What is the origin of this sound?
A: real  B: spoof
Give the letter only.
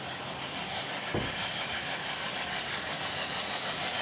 B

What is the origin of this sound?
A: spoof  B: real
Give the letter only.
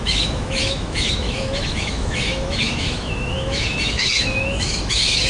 A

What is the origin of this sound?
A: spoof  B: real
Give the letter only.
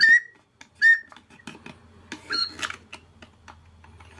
B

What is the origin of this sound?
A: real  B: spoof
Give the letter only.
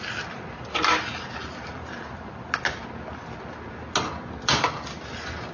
A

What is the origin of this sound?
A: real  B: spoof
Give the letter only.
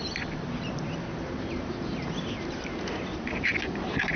A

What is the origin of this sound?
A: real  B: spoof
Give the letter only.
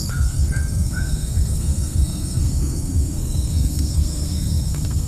B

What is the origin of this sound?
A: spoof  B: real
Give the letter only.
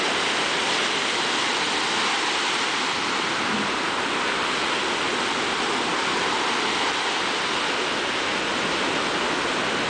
B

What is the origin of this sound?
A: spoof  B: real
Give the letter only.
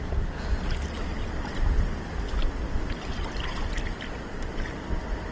B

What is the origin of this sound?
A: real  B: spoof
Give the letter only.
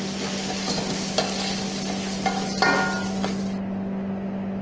A